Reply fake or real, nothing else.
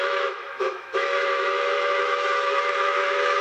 fake